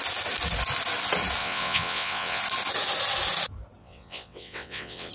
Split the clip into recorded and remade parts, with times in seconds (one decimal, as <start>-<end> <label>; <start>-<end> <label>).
0.0-1.4 recorded; 1.4-2.4 remade; 2.4-3.8 recorded; 3.8-5.1 remade